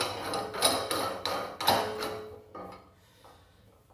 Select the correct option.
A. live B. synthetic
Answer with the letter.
A